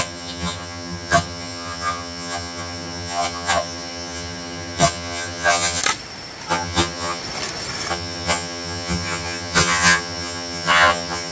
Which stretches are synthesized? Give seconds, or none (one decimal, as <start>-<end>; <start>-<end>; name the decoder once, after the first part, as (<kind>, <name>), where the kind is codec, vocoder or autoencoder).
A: 0.0-5.8 (vocoder, HiFi-GAN); 6.5-7.2; 7.9-11.3